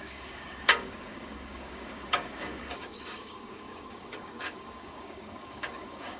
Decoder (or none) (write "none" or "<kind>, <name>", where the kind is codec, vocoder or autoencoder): codec, DAC